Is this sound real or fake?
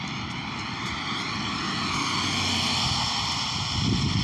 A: real